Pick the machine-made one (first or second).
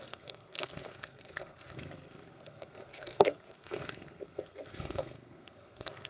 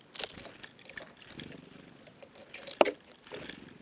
first